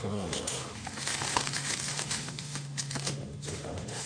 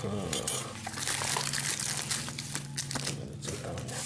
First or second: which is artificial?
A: first